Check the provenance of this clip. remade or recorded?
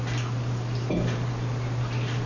recorded